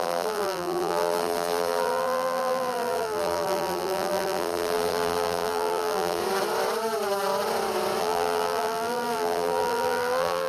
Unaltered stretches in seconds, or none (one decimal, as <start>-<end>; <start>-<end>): 6.2-8.0